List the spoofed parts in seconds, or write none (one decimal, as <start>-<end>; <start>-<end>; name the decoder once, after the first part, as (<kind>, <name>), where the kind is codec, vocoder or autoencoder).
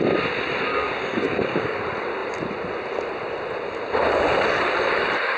0.7-1.8 (codec, DAC)